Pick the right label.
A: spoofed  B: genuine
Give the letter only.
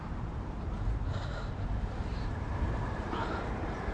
A